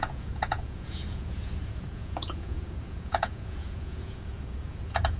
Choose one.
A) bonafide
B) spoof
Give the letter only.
B